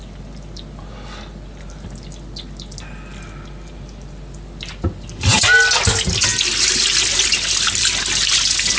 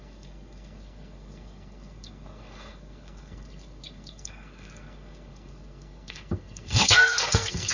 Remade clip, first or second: second